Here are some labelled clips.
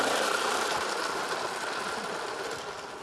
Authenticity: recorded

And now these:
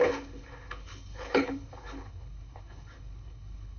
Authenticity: remade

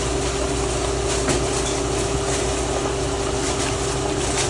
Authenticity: recorded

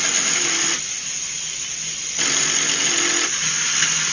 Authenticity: recorded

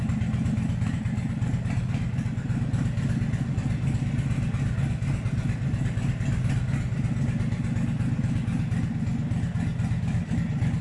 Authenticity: recorded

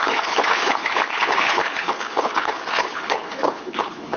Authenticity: remade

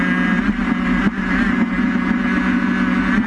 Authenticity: recorded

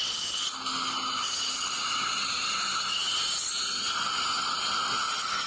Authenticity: recorded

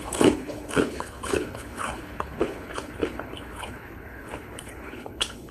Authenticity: remade